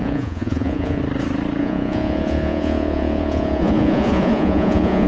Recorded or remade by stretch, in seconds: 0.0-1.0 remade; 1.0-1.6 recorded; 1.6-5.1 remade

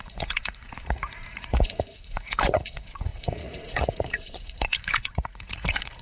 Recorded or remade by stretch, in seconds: 0.0-6.0 remade

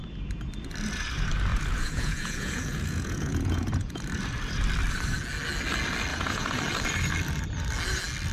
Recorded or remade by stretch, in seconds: 0.0-1.5 recorded; 1.5-4.0 remade; 4.0-6.1 recorded; 6.1-6.6 remade; 6.6-8.3 recorded

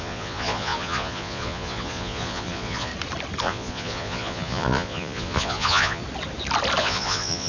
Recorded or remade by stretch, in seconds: 0.0-2.9 remade; 2.9-3.4 recorded; 3.4-6.0 remade; 6.0-6.8 recorded; 6.8-7.5 remade

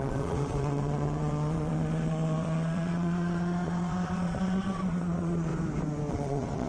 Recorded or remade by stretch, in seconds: 0.0-5.5 remade; 5.5-6.1 recorded; 6.1-6.7 remade

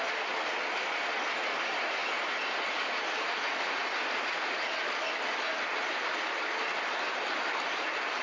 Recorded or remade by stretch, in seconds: 0.0-8.2 recorded

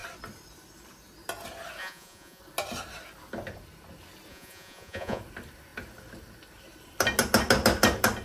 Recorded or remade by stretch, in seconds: 0.0-1.8 recorded; 1.8-2.4 remade; 2.4-4.3 recorded; 4.3-5.2 remade; 5.2-8.2 recorded

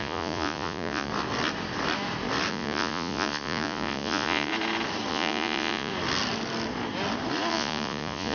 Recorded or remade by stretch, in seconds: 0.0-1.1 remade; 1.1-2.5 recorded; 2.5-4.5 remade; 4.5-5.1 recorded; 5.1-5.9 remade; 5.9-7.5 recorded; 7.5-8.3 remade